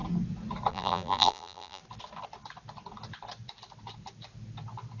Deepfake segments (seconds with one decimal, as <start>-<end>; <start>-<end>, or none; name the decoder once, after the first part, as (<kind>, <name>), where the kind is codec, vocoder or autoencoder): 0.7-1.8 (vocoder, BigVGAN v2)